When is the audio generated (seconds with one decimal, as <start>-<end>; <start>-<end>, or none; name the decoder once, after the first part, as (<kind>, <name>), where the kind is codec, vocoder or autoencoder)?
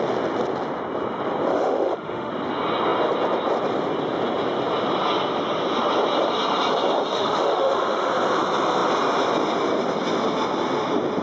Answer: 1.5-2.3 (autoencoder, DAC-VAE); 7.1-8.1